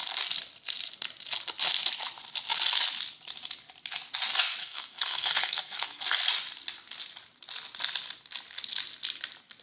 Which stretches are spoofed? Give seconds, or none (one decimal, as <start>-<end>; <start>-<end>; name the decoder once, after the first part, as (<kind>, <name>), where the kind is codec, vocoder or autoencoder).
4.6-6.0 (codec, SNAC)